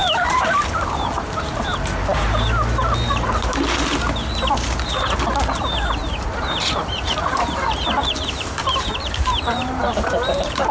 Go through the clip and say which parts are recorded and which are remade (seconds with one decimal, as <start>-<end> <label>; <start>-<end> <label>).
0.0-3.1 recorded; 3.1-3.9 remade; 3.9-5.6 recorded; 5.6-10.7 remade